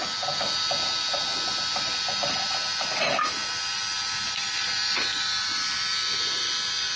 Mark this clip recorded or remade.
remade